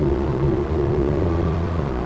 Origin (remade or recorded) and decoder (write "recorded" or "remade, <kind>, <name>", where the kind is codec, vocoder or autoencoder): remade, vocoder, Vocos